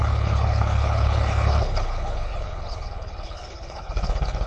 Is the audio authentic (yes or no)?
no